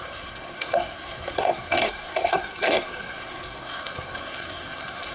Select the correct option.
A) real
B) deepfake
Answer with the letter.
B